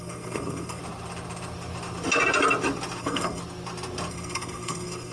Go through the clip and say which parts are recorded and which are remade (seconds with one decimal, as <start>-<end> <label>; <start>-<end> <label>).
0.0-0.8 remade; 0.8-3.0 recorded; 3.0-3.4 remade; 3.4-4.1 recorded; 4.1-5.1 remade